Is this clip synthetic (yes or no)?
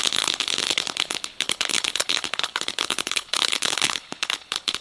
yes